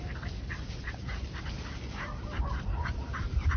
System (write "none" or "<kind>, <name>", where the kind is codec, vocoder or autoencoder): vocoder, BigVGAN v2